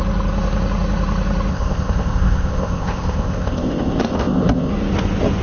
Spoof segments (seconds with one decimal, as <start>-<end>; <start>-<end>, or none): 1.5-4.7